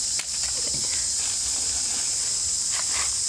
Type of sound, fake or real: real